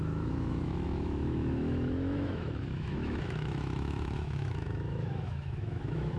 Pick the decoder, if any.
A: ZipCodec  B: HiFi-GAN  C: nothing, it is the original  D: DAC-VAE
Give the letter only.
D